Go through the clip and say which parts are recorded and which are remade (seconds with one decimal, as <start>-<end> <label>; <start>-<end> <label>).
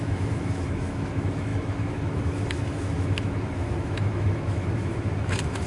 0.0-5.7 remade